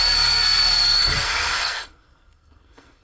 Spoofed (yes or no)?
yes